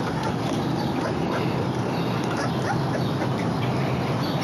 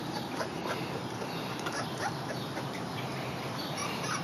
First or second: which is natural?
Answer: first